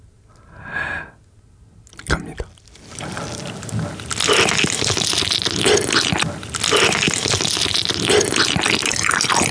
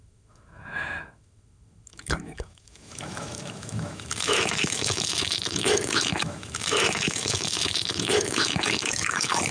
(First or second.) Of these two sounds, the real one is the first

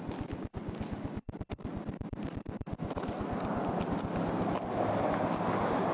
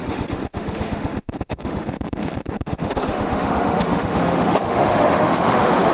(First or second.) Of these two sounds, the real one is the first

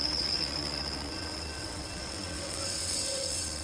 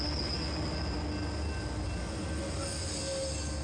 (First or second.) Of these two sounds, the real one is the second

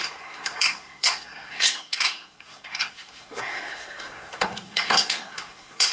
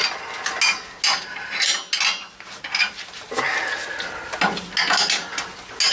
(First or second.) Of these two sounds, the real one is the second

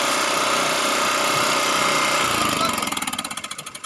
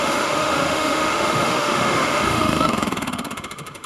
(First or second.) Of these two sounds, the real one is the first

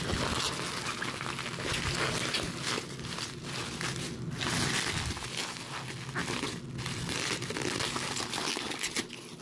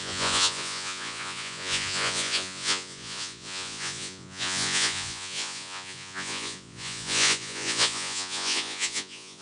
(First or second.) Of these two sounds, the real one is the first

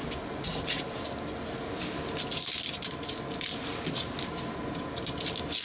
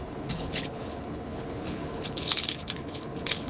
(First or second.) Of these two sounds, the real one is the first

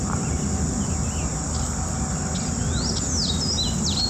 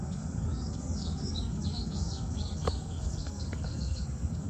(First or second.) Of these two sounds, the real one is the first